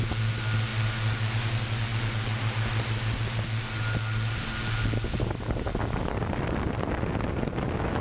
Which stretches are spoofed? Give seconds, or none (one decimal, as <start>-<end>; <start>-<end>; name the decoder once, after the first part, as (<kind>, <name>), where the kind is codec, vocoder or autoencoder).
none